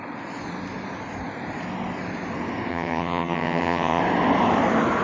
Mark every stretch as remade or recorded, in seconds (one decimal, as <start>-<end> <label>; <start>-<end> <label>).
0.0-2.7 recorded; 2.7-4.0 remade; 4.0-5.0 recorded